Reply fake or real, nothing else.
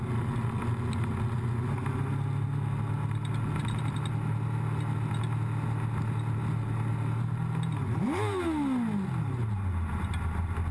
real